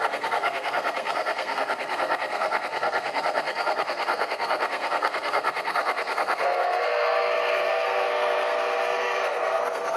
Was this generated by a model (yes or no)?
yes